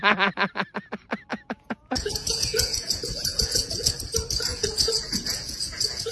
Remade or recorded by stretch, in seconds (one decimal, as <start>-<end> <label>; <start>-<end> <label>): 0.0-1.3 recorded; 1.3-3.9 remade; 3.9-4.5 recorded; 4.5-6.1 remade